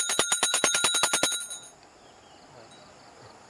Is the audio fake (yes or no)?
no